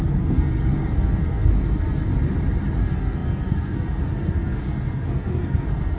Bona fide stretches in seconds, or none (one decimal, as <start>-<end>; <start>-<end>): 2.1-2.8